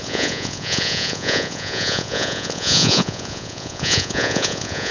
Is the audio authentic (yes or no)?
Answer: no